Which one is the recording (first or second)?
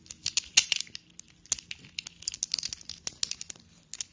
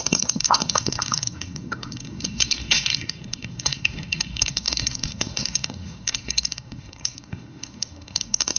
first